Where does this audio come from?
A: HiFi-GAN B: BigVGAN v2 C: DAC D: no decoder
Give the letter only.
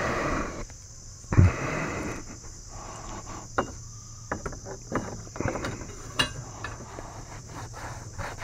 B